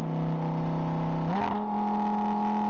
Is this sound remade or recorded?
recorded